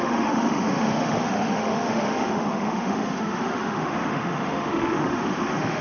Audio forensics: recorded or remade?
remade